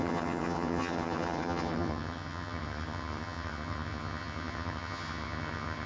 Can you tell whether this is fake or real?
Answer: fake